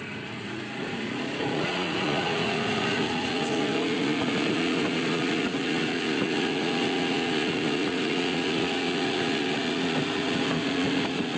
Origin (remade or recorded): remade